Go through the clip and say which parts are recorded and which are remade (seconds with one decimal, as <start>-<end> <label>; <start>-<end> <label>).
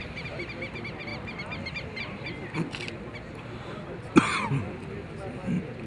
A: 0.0-5.9 recorded